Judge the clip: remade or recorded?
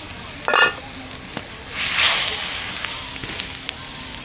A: recorded